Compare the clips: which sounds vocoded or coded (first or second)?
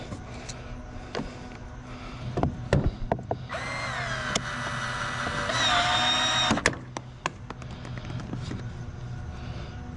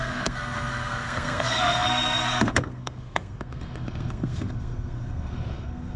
second